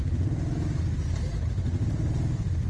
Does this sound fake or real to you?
real